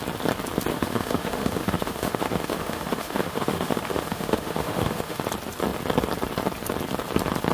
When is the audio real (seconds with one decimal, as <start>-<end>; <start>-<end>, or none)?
0.0-0.7; 5.2-7.5

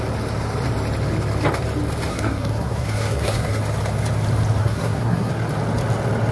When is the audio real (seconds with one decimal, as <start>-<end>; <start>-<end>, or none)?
0.0-2.1; 3.6-4.6; 5.3-6.3

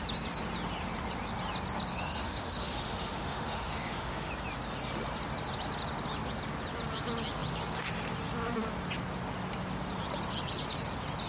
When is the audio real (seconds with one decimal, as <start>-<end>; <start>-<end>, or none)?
0.0-1.9; 4.3-11.3

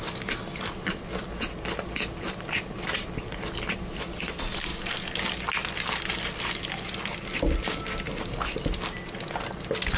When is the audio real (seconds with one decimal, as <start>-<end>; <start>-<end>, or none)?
4.7-7.8

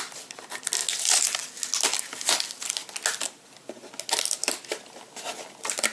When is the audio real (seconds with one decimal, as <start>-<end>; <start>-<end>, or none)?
0.0-5.9

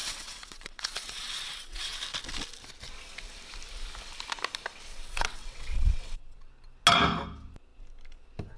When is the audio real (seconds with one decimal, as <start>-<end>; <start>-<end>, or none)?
2.0-4.9; 6.5-8.6

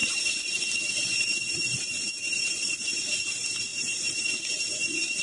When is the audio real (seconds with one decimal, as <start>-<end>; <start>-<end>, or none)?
3.1-3.7; 4.2-5.2